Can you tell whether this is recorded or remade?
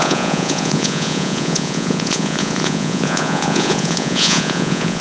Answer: remade